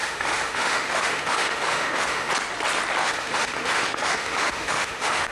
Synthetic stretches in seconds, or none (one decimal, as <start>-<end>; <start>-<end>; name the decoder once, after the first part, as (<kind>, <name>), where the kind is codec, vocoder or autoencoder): 0.0-2.3 (autoencoder, DAC-VAE); 3.0-5.3